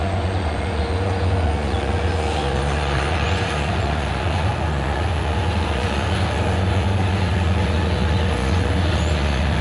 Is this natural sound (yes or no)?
no